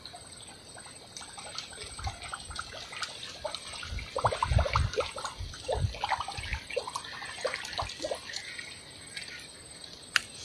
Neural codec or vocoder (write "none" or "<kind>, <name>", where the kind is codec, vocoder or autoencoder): none